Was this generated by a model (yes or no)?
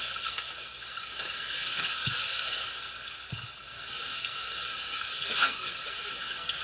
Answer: yes